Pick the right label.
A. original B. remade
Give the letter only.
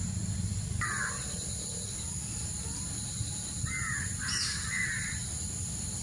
A